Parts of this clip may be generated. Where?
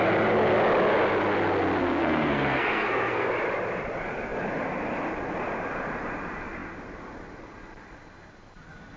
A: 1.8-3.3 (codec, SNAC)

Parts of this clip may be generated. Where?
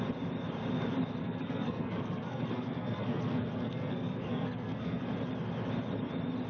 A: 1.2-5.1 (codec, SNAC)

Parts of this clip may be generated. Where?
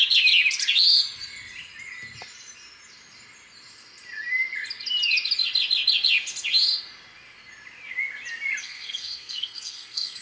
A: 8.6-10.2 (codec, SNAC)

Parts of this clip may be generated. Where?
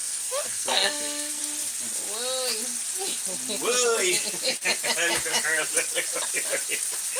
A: 0.0-1.4 (codec, SNAC)